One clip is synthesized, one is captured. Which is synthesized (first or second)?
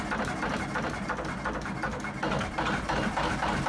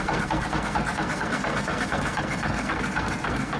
second